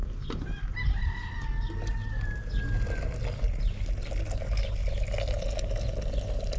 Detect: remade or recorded recorded